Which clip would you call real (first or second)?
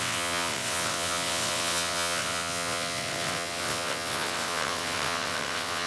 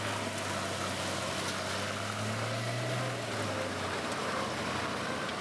second